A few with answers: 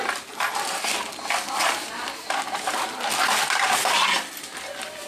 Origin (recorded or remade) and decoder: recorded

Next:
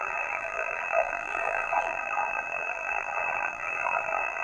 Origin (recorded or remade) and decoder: remade, vocoder, BigVGAN v2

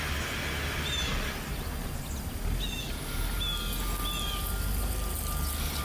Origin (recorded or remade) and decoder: recorded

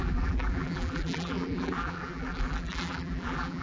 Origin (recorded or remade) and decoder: remade, vocoder, BigVGAN v2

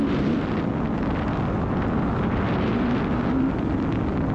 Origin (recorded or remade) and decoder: recorded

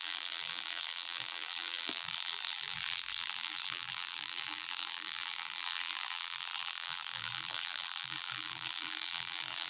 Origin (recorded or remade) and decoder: remade, vocoder, BigVGAN v2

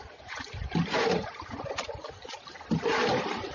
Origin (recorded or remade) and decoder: recorded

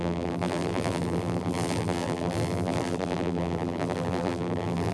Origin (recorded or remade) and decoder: remade, vocoder, BigVGAN v2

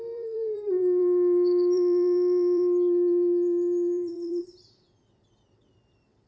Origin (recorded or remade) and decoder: remade, vocoder, BigVGAN v2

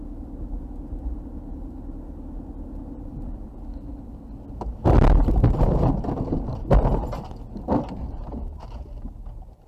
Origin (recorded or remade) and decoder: recorded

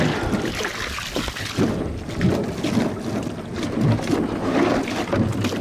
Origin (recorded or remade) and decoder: recorded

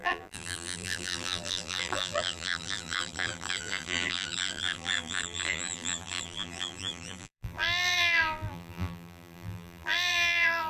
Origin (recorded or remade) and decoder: remade, vocoder, BigVGAN v2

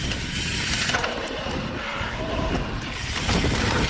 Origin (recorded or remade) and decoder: recorded